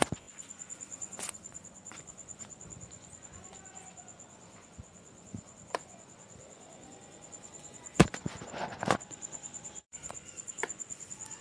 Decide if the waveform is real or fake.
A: fake